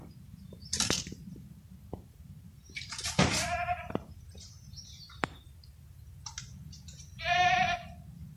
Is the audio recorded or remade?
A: remade